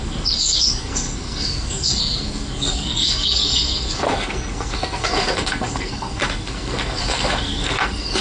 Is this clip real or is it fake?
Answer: fake